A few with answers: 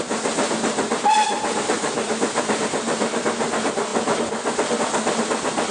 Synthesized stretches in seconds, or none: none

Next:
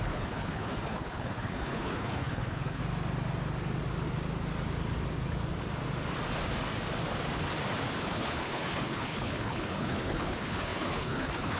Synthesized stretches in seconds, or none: 0.0-2.8 (codec, HILCodec); 8.0-11.6